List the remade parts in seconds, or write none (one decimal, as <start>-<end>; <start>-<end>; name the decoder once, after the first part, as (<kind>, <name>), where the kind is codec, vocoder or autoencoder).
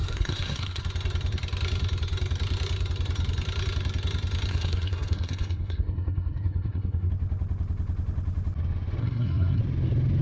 0.0-0.8 (codec, SNAC); 4.5-7.1; 9.0-9.6